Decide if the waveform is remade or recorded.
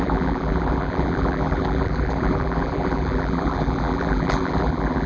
remade